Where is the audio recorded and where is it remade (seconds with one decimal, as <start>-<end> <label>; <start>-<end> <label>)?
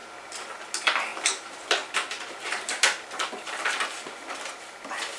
0.0-5.2 recorded